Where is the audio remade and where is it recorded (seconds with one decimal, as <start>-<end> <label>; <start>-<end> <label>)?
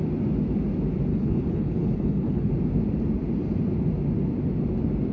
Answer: 0.0-1.1 recorded; 1.1-2.5 remade; 2.5-5.1 recorded